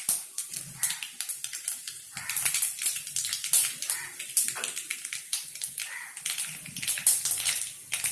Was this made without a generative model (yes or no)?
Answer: yes